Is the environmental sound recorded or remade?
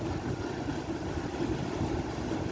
recorded